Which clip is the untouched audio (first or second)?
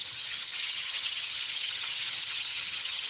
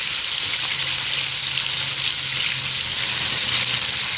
second